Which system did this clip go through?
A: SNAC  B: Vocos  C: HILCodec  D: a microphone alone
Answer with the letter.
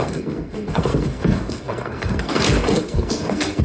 A